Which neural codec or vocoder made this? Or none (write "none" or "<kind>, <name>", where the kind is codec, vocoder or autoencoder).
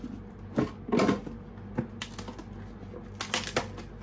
none